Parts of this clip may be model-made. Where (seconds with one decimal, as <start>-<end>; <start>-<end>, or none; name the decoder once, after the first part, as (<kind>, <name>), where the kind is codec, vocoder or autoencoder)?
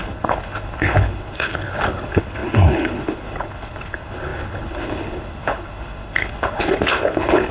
0.0-7.5 (codec, HILCodec)